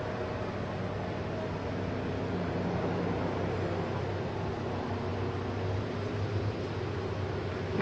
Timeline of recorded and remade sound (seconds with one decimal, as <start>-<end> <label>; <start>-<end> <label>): 0.0-7.8 recorded